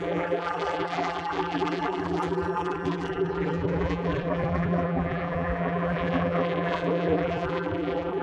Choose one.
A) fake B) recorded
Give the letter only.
A